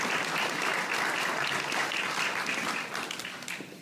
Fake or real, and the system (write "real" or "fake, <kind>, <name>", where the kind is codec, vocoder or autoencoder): real